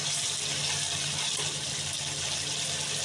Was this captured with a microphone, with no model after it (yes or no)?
yes